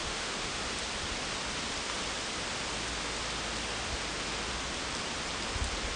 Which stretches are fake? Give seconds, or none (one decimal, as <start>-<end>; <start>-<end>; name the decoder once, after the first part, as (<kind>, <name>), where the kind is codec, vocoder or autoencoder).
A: 0.0-0.6 (autoencoder, DAC-VAE)